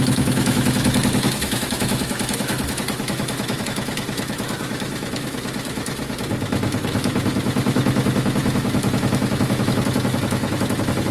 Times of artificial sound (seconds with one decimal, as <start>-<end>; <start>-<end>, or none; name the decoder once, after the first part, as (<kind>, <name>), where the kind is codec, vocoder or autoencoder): 0.0-11.1 (autoencoder, DAC-VAE)